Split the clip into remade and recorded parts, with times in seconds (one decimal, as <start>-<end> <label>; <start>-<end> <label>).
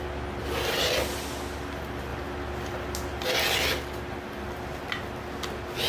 0.0-5.9 recorded